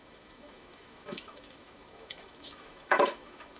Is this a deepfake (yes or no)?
yes